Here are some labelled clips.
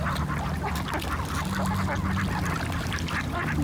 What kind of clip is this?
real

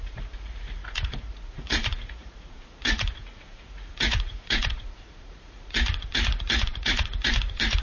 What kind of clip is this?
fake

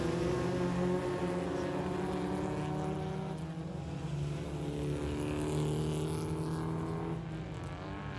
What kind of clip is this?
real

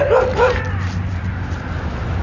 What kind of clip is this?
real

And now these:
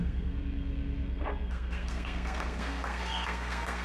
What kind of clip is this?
fake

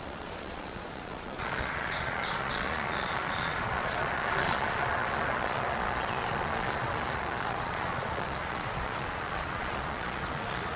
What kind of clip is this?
fake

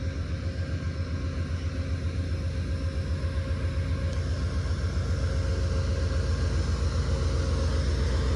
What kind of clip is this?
real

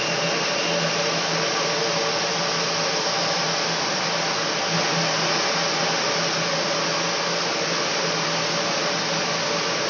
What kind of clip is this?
real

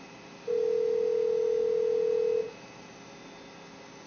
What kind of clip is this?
real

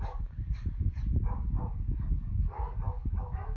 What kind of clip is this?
fake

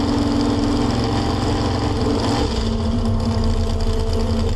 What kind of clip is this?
real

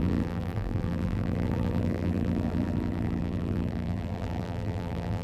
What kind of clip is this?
fake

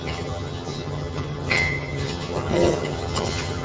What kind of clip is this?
fake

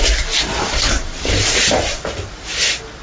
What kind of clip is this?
real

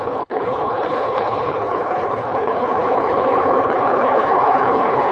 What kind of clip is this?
fake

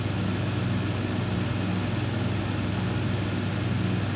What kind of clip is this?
real